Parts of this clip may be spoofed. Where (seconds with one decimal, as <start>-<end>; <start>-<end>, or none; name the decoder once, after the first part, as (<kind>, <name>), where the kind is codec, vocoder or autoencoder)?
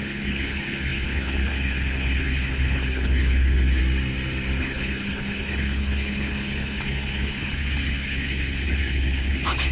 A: 0.0-3.8 (codec, HILCodec); 4.6-9.7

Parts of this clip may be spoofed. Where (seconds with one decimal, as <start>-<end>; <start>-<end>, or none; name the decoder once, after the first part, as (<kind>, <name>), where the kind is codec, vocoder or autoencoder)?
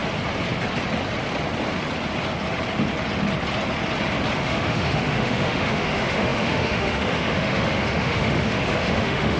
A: 4.4-9.4 (autoencoder, DAC-VAE)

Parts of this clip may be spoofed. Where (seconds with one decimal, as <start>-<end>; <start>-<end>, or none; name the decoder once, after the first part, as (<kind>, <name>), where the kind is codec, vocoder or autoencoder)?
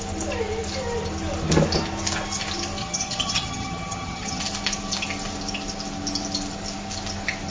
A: 2.8-4.4 (vocoder, HiFi-GAN)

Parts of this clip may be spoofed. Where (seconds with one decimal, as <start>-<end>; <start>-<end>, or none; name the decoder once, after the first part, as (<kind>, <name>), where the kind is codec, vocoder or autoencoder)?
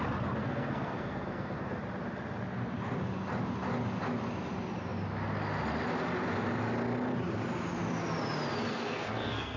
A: 0.4-1.6 (codec, SNAC); 8.7-9.6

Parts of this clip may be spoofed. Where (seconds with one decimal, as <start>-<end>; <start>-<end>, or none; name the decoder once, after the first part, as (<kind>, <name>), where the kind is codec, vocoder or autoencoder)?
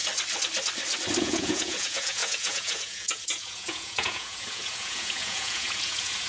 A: 1.2-6.3 (vocoder, Vocos)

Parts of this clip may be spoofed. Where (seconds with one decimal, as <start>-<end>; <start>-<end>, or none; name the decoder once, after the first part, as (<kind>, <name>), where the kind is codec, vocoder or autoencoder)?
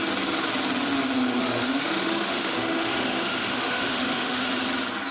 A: 1.4-4.5 (autoencoder, DAC-VAE)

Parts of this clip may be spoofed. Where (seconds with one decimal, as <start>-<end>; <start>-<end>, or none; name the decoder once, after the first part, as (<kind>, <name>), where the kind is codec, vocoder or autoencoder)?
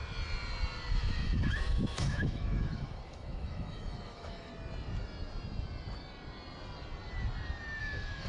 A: 0.9-4.5 (autoencoder, DAC-VAE); 7.8-8.3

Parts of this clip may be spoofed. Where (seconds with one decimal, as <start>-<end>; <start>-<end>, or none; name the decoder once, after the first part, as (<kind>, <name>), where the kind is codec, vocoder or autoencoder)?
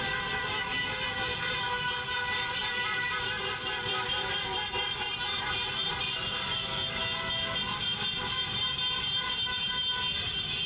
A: 0.0-7.0 (vocoder, BigVGAN v2); 8.2-10.7